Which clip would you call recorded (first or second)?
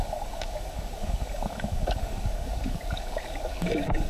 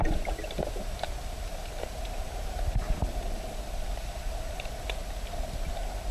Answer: second